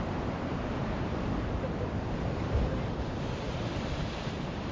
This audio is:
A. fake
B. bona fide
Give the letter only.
A